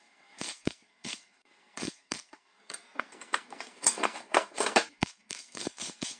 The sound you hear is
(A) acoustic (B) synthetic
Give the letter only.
B